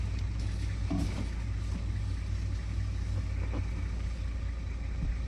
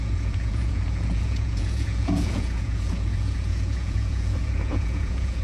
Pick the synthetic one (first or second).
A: second